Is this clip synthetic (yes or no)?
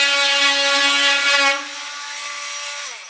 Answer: no